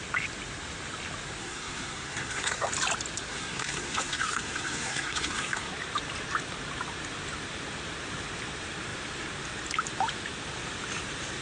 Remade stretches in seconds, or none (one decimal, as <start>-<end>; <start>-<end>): 1.4-2.7; 3.3-5.7